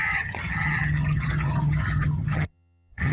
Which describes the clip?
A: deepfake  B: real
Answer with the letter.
A